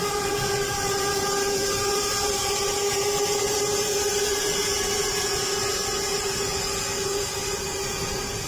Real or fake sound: fake